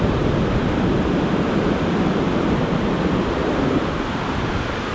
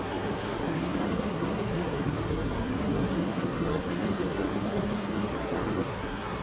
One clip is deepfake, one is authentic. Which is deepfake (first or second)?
second